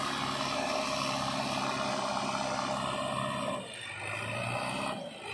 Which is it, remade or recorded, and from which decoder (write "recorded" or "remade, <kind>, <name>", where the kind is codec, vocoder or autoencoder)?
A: recorded